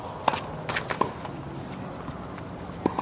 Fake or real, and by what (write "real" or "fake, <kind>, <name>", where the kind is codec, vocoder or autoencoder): real